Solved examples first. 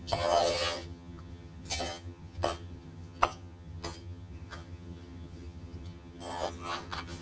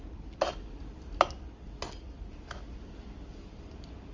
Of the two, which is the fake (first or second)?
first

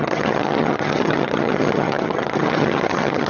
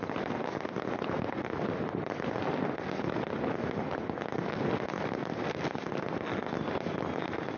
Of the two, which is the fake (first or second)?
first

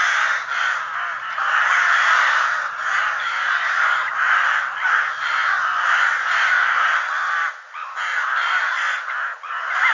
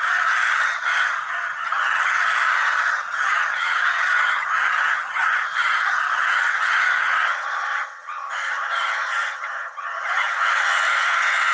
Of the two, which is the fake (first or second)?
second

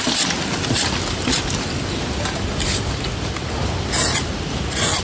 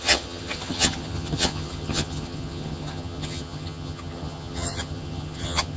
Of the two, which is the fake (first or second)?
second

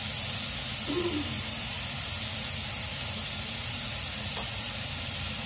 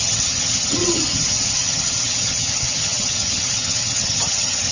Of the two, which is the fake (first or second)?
second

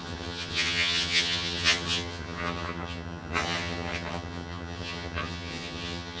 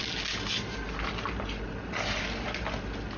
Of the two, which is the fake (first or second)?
first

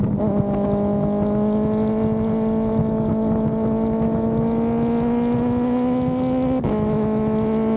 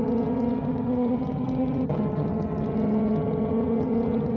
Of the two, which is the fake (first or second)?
second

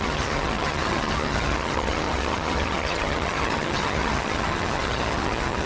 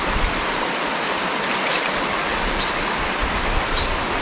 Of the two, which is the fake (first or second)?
first